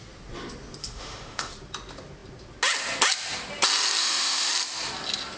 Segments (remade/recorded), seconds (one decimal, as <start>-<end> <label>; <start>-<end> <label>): 0.0-0.8 recorded; 0.8-1.5 remade; 1.5-4.0 recorded; 4.0-4.5 remade; 4.5-5.4 recorded